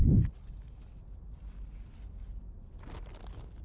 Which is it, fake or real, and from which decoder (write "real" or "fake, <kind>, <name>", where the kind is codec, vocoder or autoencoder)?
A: real